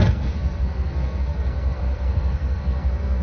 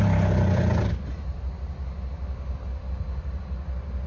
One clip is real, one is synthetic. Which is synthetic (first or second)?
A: first